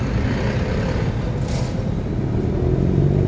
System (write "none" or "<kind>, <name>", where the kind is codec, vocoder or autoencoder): none